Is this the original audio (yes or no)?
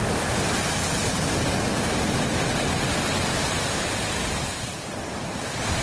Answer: yes